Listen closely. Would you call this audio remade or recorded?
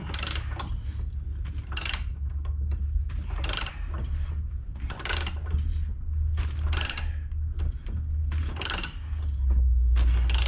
recorded